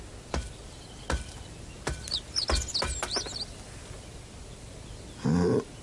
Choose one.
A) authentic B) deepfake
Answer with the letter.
A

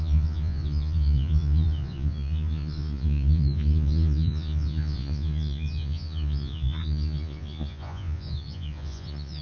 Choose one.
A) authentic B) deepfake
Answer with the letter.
B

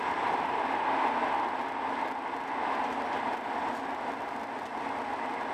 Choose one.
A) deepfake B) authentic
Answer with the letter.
B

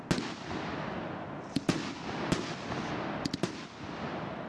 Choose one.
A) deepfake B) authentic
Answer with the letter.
B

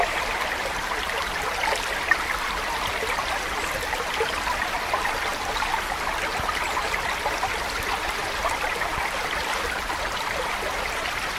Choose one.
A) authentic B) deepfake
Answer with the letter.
A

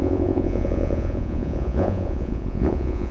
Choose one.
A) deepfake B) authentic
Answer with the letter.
A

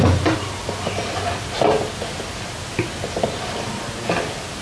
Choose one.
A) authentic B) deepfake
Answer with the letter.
A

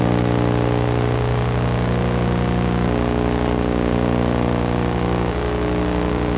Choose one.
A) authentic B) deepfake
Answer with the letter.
A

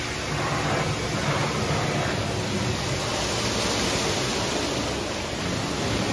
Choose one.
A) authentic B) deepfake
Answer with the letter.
A